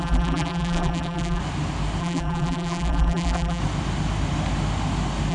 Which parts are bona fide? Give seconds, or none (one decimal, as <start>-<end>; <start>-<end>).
1.4-2.0; 3.6-5.3